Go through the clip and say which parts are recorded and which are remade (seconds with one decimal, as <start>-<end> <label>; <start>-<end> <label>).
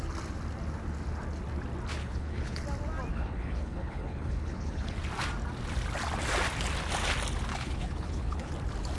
0.0-2.0 recorded; 2.0-2.6 remade; 2.6-3.1 recorded; 3.1-5.0 remade; 5.0-7.5 recorded; 7.5-8.5 remade; 8.5-9.0 recorded